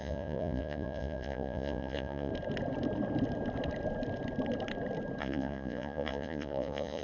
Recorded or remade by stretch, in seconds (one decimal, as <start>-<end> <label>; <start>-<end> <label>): 0.0-2.3 remade; 2.3-5.2 recorded; 5.2-7.0 remade